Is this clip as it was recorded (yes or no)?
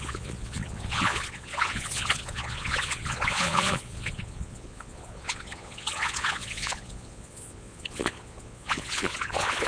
no